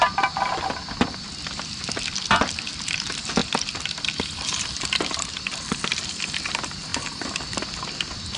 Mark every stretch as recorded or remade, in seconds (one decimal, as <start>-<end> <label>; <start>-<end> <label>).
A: 0.0-8.4 recorded